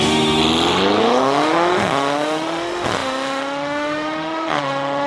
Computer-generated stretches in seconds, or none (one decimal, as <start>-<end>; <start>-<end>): 0.0-0.4; 1.0-5.1